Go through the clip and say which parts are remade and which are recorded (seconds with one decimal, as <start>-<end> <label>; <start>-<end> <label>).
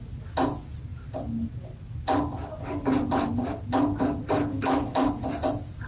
0.0-4.5 recorded; 4.5-5.1 remade; 5.1-5.9 recorded